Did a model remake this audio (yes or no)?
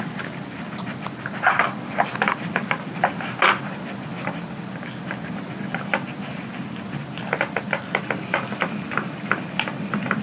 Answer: no